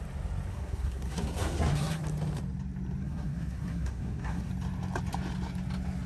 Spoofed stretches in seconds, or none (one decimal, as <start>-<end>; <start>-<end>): 0.5-2.0; 3.0-4.5